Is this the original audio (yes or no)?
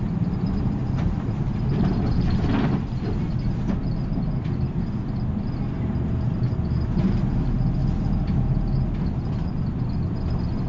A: yes